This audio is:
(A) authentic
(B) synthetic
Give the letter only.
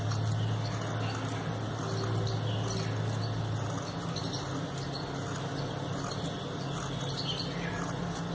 A